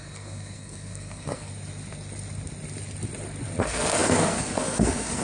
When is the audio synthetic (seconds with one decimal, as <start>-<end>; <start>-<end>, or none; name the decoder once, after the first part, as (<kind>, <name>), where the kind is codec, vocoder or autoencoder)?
0.0-1.5 (codec, SNAC); 3.6-5.2